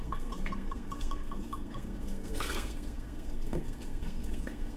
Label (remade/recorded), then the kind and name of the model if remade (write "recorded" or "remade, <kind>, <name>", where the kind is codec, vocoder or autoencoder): remade, codec, SNAC